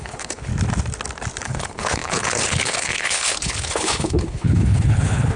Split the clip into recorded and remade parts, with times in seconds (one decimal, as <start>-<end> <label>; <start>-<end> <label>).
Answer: 0.0-0.5 remade; 0.5-1.4 recorded; 1.4-5.4 remade